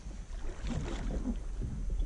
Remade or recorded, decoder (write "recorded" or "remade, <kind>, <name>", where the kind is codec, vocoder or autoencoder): recorded